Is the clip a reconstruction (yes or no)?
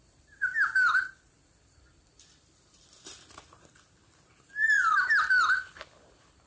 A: yes